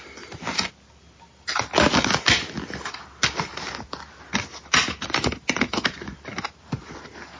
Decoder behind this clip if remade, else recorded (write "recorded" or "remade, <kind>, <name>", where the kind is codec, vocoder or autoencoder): recorded